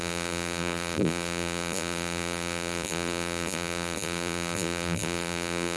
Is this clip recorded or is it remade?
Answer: remade